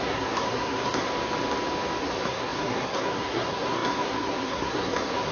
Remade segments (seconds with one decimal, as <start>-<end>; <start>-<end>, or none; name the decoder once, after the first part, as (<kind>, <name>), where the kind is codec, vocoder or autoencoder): 0.0-1.1 (codec, SNAC); 2.0-5.3